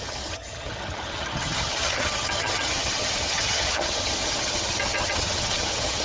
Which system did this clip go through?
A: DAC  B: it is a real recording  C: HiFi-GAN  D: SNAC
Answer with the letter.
C